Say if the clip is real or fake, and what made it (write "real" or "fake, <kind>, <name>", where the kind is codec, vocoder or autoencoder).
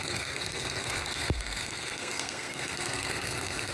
fake, codec, SNAC